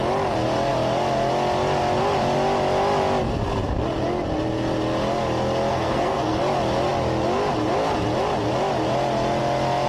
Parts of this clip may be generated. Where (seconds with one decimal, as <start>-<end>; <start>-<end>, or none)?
5.7-6.4